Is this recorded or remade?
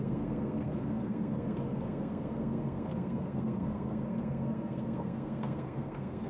remade